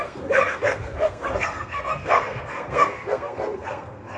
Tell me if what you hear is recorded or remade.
remade